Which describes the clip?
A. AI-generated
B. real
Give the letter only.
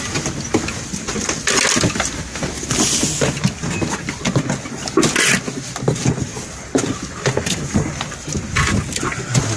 B